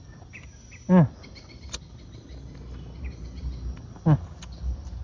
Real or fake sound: real